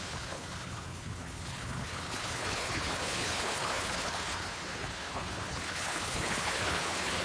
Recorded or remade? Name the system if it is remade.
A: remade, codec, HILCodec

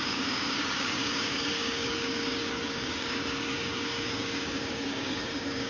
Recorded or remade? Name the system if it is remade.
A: remade, codec, DAC